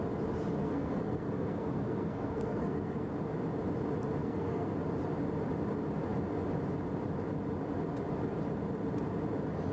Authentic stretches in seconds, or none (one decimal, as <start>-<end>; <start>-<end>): 0.0-0.6; 3.1-4.2; 4.7-9.7